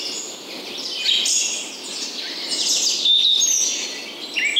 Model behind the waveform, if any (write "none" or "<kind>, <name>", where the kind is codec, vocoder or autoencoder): none